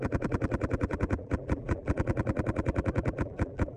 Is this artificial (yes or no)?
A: yes